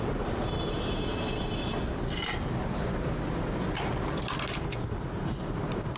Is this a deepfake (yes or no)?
no